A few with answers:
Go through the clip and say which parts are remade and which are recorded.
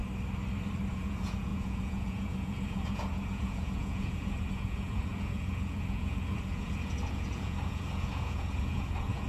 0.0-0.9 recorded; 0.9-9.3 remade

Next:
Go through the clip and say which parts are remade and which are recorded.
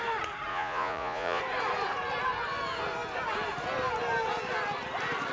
0.0-0.5 recorded; 0.5-1.4 remade; 1.4-5.3 recorded